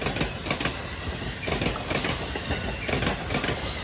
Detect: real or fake real